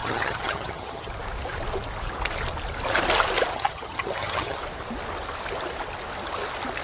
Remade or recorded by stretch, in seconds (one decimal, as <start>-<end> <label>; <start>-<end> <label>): 0.0-1.1 remade; 1.1-3.5 recorded; 3.5-4.6 remade; 4.6-6.8 recorded